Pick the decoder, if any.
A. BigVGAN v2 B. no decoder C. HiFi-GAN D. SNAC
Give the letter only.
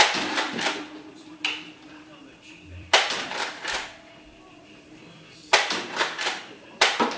A